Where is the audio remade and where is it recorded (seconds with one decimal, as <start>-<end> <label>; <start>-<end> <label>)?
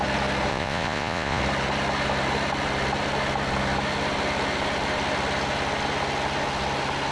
0.0-0.5 recorded; 0.5-1.4 remade; 1.4-7.1 recorded